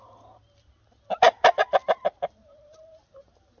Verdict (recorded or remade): recorded